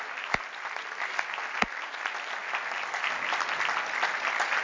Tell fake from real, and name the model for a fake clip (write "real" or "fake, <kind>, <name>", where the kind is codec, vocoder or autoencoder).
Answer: real